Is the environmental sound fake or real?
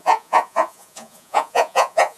fake